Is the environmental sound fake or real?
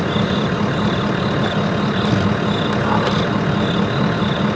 real